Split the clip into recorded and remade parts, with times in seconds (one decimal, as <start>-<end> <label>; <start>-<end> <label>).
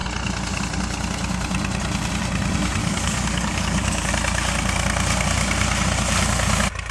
0.0-2.8 recorded; 2.8-4.1 remade; 4.1-6.9 recorded